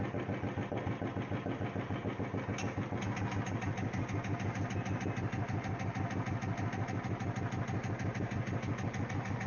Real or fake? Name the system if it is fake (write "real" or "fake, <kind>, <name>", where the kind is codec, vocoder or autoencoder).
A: real